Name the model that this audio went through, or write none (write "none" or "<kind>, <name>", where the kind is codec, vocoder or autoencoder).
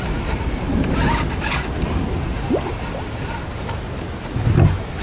none